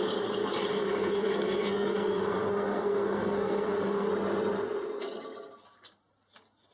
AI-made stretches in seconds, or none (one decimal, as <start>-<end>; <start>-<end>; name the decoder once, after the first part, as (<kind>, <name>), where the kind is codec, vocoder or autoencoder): 0.7-4.1 (codec, SNAC)